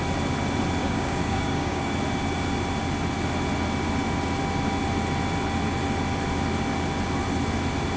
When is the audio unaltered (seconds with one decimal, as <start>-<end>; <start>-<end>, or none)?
0.0-0.8; 1.9-8.0